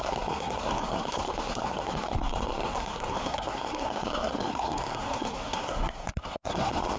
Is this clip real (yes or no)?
no